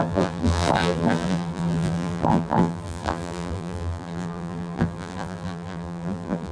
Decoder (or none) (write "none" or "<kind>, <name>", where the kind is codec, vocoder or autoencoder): vocoder, BigVGAN v2